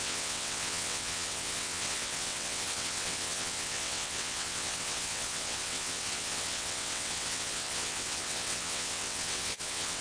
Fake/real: fake